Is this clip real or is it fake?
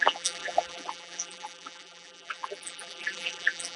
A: fake